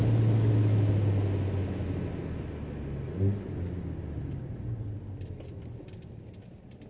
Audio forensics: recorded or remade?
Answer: recorded